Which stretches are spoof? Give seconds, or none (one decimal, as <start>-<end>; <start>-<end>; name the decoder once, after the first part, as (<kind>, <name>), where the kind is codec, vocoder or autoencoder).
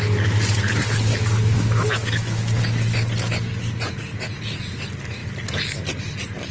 1.1-2.6 (autoencoder, DAC-VAE)